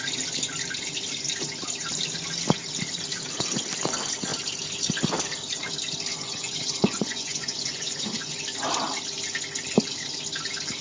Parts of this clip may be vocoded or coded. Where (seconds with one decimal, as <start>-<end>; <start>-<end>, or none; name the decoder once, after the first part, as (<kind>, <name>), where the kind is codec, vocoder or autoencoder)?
6.1-8.4 (vocoder, Vocos)